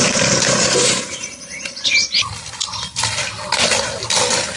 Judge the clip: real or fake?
fake